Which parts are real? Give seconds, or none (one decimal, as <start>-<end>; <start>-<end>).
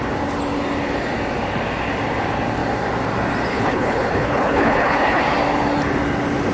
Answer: 0.0-3.5; 5.2-6.5